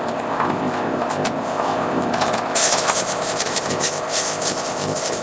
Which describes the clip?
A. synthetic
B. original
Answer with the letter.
A